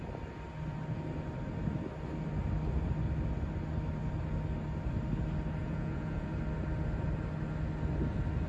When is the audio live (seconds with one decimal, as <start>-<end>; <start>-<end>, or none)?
0.0-5.6; 6.4-8.5